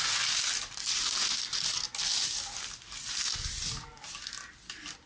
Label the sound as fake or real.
real